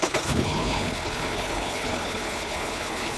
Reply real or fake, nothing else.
fake